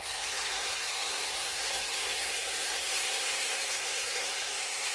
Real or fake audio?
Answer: fake